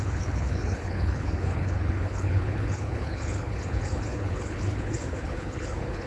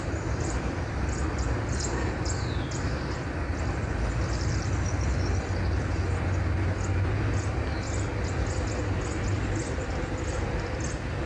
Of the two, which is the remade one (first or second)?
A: first